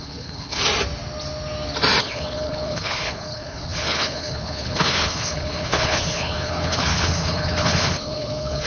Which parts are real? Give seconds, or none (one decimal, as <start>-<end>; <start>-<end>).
0.6-2.0